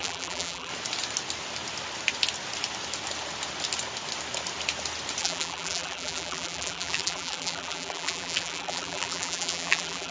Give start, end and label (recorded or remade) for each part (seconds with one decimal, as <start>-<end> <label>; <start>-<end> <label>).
0.0-0.7 remade; 0.7-5.2 recorded; 5.2-10.1 remade